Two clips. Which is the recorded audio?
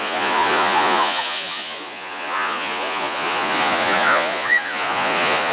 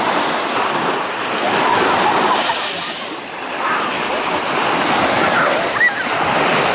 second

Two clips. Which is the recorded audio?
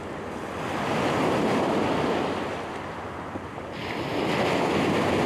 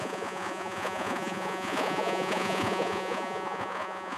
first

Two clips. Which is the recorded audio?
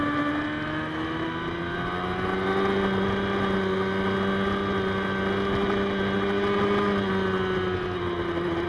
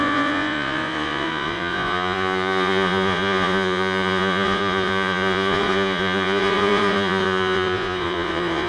first